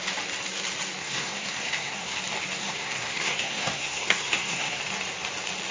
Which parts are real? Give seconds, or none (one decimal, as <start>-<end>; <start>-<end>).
0.0-1.0; 2.2-2.6; 4.8-5.7